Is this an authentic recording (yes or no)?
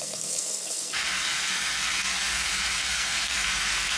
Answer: no